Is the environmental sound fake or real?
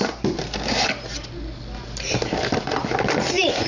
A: real